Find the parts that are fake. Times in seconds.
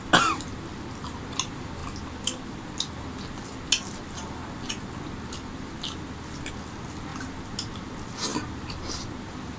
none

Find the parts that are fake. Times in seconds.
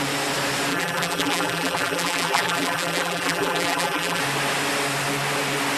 0.7-4.2 (vocoder, BigVGAN v2)